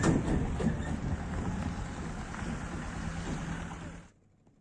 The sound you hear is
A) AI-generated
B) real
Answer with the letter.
B